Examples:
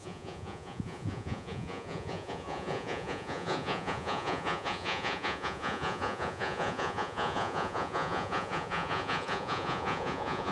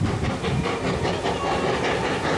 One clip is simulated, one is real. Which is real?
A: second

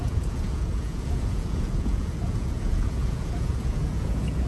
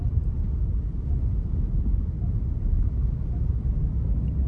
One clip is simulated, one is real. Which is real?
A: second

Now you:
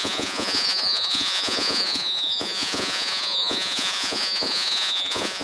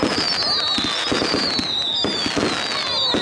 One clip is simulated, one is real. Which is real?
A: second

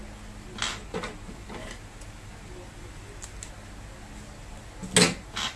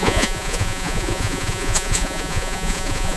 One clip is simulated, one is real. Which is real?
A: first